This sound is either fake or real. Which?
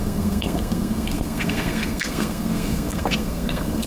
fake